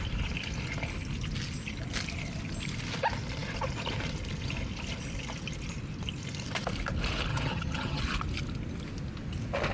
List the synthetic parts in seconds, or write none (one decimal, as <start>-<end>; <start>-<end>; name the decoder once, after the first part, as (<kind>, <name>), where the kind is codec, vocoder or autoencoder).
7.3-8.0 (vocoder, HiFi-GAN)

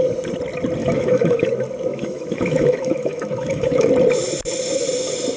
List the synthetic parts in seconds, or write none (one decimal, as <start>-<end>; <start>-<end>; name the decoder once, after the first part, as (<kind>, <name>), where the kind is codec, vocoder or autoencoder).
0.8-1.5 (autoencoder, DAC-VAE); 1.9-3.9

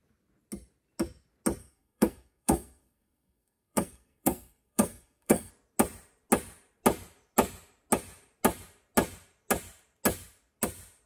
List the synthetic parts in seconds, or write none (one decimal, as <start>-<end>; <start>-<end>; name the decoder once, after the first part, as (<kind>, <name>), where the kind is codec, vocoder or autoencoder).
1.6-5.5 (codec, SNAC)

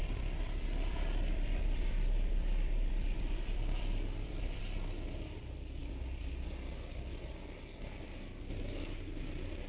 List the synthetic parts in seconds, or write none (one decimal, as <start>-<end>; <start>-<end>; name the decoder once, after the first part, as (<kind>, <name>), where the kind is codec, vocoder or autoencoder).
0.0-4.6 (vocoder, BigVGAN v2); 5.8-6.5

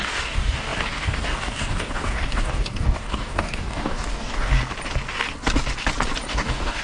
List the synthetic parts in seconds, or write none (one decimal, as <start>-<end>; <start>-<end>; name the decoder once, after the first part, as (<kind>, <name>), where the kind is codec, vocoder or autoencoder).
0.0-4.6 (codec, DAC); 6.3-6.8

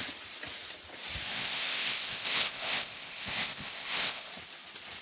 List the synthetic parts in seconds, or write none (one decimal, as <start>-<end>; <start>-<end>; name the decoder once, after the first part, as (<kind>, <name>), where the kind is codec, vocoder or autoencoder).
1.3-4.3 (codec, ZipCodec)